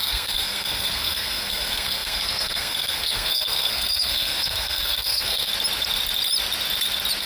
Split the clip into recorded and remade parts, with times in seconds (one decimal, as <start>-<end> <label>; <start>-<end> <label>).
0.0-5.5 remade; 5.5-7.2 recorded